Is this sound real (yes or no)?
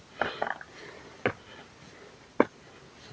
yes